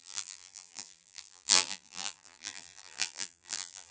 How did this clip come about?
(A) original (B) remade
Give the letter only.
B